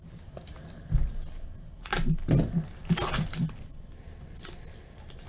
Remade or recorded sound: recorded